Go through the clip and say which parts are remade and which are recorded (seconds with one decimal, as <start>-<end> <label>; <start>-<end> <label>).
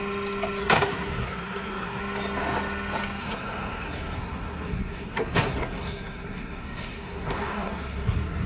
0.0-0.6 recorded; 0.6-2.0 remade; 2.0-3.2 recorded; 3.2-8.5 remade